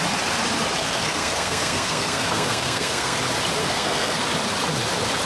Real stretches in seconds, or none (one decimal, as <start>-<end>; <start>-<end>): 0.0-0.8; 3.2-3.6; 4.2-5.3